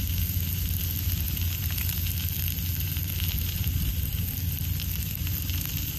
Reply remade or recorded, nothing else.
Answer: recorded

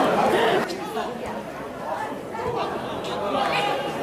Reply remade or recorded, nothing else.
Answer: recorded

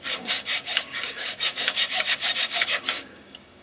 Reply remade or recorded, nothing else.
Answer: remade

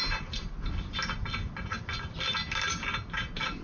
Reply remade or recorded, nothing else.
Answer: recorded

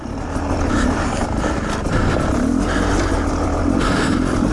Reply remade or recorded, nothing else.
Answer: recorded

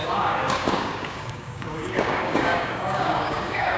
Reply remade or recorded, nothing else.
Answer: remade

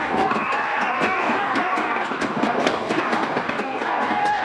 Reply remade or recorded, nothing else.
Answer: remade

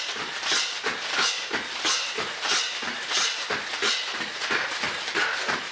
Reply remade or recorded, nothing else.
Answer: recorded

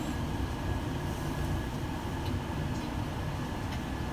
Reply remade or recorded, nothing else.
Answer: recorded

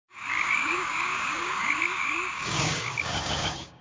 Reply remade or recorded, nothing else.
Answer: remade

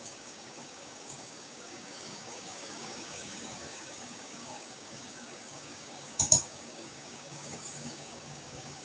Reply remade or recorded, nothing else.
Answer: remade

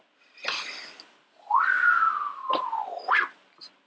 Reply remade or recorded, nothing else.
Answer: recorded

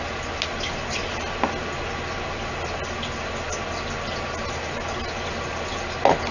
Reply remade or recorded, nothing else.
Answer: recorded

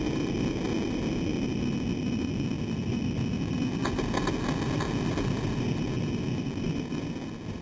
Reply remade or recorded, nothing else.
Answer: recorded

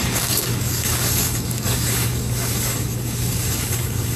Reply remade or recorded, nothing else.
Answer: remade